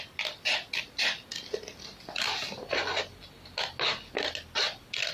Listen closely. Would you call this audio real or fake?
real